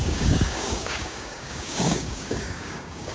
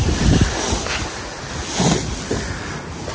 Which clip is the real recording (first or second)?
second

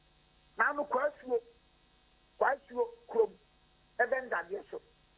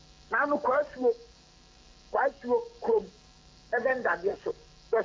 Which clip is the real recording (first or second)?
first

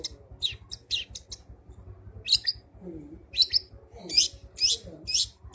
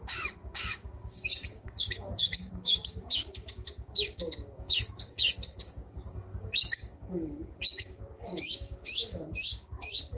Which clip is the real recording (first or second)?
first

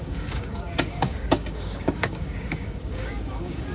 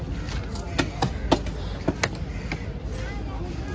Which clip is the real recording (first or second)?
second